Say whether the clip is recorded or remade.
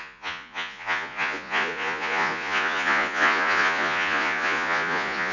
remade